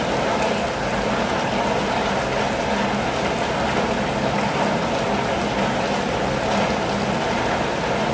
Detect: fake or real real